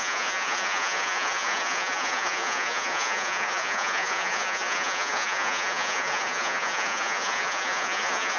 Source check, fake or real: fake